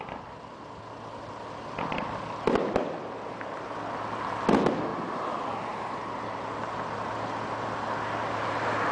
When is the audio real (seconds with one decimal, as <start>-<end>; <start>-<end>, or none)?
0.0-4.9; 5.6-8.9